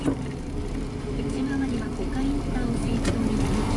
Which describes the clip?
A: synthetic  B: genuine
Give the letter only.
B